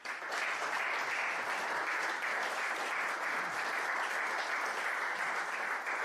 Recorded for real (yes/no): yes